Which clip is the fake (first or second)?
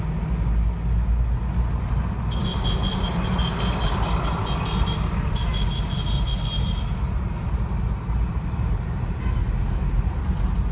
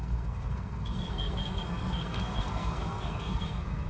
second